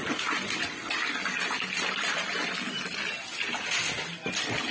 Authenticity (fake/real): real